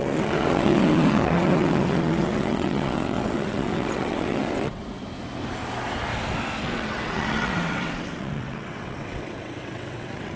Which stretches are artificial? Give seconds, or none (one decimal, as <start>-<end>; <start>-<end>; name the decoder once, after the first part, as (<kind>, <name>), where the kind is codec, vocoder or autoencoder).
0.0-4.8 (vocoder, WaveNeXt); 6.6-10.4